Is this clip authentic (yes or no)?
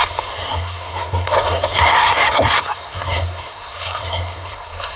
no